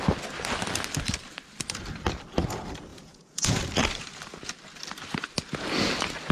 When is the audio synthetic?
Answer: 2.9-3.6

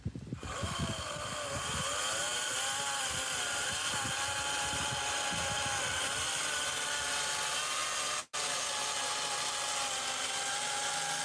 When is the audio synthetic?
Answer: 0.0-7.8

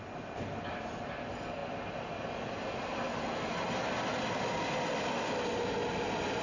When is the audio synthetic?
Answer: none

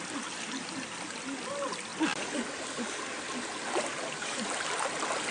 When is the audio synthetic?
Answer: none